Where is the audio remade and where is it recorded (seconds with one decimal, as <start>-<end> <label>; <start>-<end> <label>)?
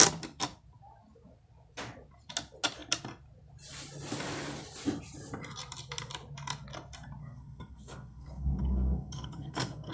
0.0-7.2 recorded; 7.2-9.9 remade